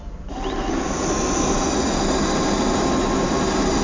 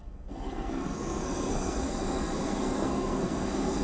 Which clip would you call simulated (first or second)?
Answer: second